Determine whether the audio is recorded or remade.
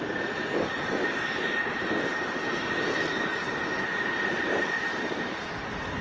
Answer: recorded